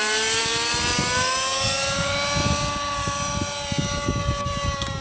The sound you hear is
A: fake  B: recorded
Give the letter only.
B